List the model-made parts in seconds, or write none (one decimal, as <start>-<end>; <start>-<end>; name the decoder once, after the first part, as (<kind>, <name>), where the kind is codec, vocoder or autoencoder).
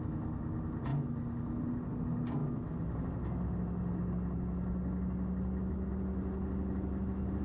none